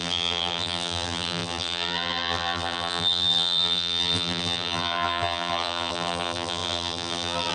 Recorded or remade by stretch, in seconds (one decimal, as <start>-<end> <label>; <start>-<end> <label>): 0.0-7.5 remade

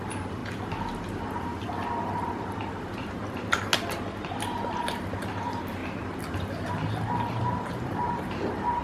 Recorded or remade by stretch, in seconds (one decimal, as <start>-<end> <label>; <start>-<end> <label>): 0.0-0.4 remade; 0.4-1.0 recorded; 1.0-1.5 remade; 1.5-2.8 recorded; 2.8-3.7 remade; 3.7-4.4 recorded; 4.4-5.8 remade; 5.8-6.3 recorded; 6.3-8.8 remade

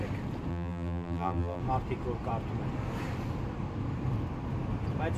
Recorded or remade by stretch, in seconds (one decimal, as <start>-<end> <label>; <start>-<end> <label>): 0.0-0.5 recorded; 0.5-1.6 remade; 1.6-5.2 recorded

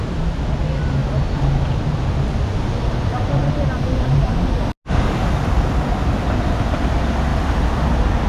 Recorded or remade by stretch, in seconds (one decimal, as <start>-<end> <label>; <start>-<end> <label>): 0.0-7.3 recorded; 7.3-7.8 remade; 7.8-8.3 recorded

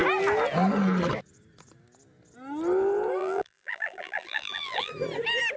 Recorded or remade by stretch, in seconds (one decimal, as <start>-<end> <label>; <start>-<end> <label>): 0.0-3.2 recorded; 3.2-4.9 remade; 4.9-5.6 recorded

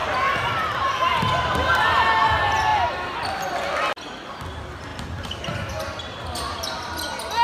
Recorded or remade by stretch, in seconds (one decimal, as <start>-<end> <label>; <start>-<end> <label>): 0.0-1.2 remade; 1.2-2.7 recorded; 2.7-3.5 remade; 3.5-4.9 recorded; 4.9-5.7 remade; 5.7-7.4 recorded

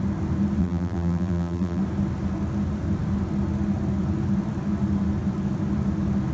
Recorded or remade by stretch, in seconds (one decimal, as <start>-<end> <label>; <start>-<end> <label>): 0.0-0.6 recorded; 0.6-1.8 remade; 1.8-6.3 recorded

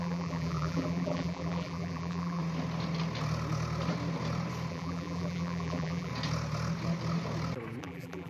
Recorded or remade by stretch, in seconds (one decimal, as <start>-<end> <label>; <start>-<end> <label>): 0.0-2.4 remade; 2.4-4.7 recorded; 4.7-6.1 remade; 6.1-7.8 recorded; 7.8-8.3 remade